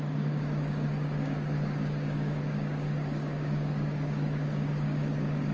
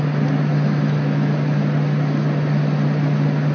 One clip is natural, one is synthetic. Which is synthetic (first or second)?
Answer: first